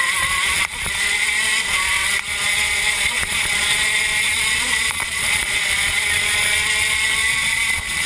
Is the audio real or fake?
fake